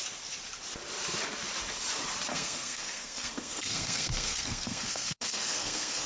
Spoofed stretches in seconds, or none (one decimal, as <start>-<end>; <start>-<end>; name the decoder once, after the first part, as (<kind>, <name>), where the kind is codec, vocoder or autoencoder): 2.3-6.1 (codec, SNAC)